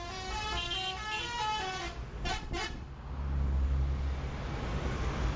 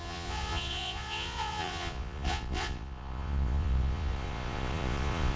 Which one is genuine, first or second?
first